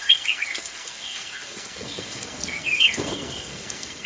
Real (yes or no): no